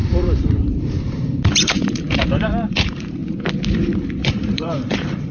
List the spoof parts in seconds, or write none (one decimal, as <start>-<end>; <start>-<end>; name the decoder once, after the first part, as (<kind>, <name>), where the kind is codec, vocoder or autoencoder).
0.0-3.2 (vocoder, BigVGAN v2); 4.2-5.3